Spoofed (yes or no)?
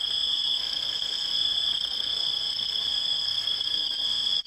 yes